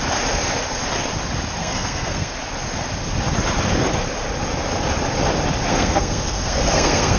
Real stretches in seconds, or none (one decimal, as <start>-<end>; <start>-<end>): 0.0-1.6; 2.3-5.7